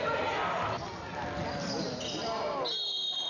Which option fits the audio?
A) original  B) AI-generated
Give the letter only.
A